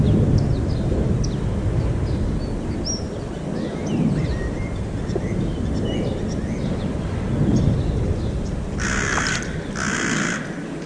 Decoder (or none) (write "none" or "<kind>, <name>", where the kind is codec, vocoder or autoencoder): none